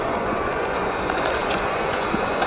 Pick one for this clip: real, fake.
fake